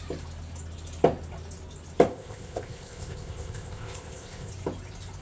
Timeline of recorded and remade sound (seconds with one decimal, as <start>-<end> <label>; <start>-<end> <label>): 0.0-2.1 recorded; 2.1-4.5 remade; 4.5-5.2 recorded

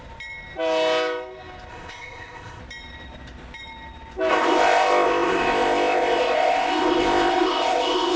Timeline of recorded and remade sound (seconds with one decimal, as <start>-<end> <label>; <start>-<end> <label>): 0.0-1.7 recorded; 1.7-2.6 remade; 2.6-4.3 recorded; 4.3-8.2 remade